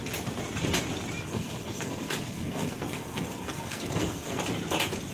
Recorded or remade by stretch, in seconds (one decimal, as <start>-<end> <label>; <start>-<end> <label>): 0.0-1.3 recorded; 1.3-4.4 remade; 4.4-5.1 recorded

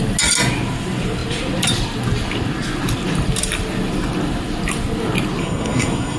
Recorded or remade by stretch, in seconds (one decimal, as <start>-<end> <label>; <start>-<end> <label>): 0.0-5.4 recorded; 5.4-6.2 remade

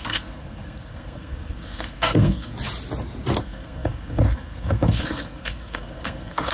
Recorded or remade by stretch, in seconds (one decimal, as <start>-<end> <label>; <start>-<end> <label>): 0.0-2.5 remade; 2.5-3.4 recorded; 3.4-6.5 remade

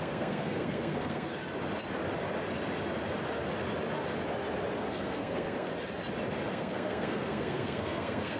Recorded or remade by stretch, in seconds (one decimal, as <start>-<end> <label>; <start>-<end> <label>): 0.0-1.4 remade; 1.4-4.9 recorded; 4.9-5.7 remade; 5.7-6.5 recorded; 6.5-8.4 remade

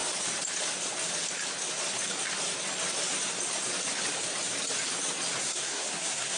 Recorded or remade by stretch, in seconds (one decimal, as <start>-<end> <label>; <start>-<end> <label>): 0.0-5.4 recorded; 5.4-6.4 remade

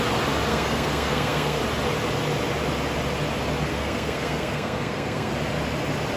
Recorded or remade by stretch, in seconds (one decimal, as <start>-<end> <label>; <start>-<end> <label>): 0.0-0.5 recorded; 0.5-1.6 remade; 1.6-3.7 recorded; 3.7-5.3 remade; 5.3-6.2 recorded

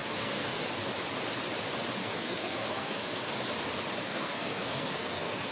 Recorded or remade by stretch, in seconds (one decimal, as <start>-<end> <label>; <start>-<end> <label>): 0.0-0.6 remade; 0.6-2.0 recorded; 2.0-3.3 remade; 3.3-4.0 recorded; 4.0-5.5 remade